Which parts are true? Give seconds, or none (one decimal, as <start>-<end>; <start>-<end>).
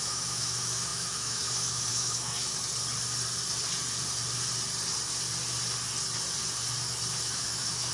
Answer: 2.5-7.2